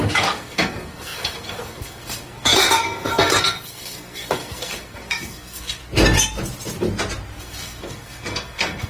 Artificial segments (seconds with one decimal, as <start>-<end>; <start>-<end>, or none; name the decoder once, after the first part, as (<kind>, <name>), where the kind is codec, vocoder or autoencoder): 0.0-5.8 (codec, SNAC); 7.4-8.9